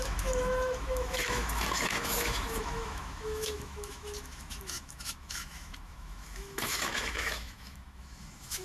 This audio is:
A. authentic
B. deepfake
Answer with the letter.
B